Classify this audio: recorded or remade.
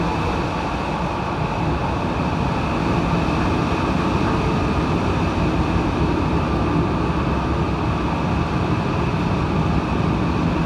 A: recorded